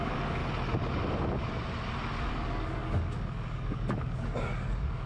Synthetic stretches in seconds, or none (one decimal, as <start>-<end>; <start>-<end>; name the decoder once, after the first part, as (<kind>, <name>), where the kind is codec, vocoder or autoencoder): 0.0-0.4 (codec, DAC); 2.3-5.1